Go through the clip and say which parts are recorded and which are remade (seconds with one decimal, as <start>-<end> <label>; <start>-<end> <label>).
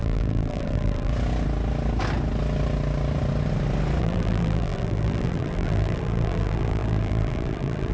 0.0-1.1 remade; 1.1-4.0 recorded; 4.0-7.9 remade